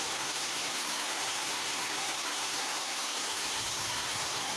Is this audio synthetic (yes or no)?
yes